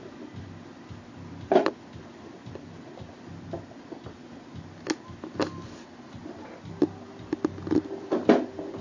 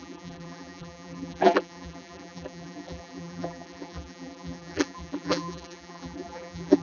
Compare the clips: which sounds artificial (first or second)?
second